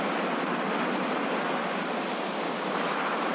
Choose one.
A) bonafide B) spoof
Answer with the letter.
A